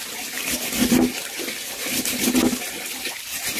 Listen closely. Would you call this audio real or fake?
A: real